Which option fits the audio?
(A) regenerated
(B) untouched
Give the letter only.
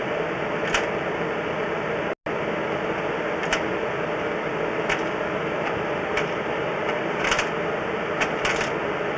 B